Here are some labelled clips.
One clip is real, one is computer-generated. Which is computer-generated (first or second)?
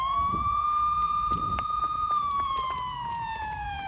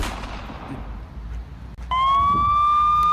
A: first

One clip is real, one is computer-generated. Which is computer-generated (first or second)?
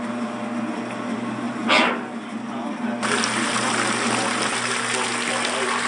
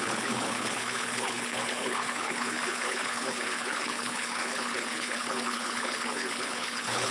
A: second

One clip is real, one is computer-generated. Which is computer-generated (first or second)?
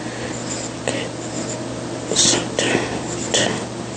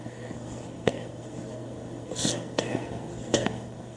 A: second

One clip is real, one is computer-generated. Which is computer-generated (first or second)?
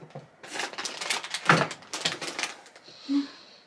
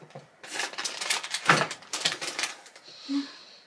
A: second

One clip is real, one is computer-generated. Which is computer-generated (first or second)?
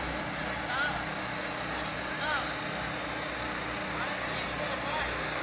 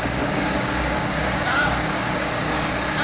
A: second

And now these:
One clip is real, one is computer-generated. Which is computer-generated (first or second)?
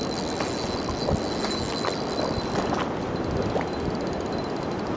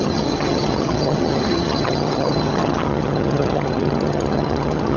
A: second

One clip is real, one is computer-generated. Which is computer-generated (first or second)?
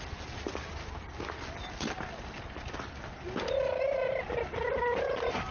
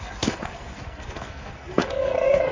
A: second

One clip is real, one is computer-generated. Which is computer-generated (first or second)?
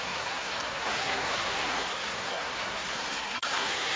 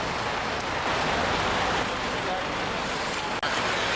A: first